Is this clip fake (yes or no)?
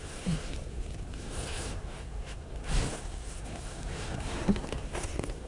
yes